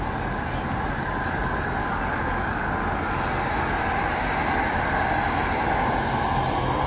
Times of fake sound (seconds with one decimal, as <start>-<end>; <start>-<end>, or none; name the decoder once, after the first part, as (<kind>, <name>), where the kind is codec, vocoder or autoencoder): 1.8-3.1 (codec, DAC)